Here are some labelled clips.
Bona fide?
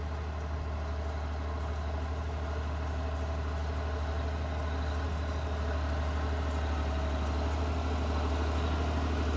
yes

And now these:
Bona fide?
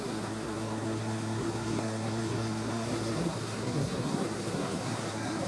no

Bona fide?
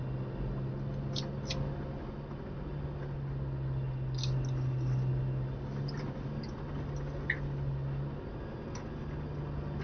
yes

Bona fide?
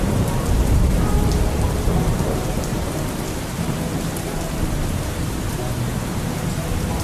no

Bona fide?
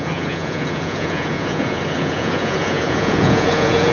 no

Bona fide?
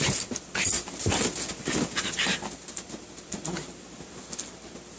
yes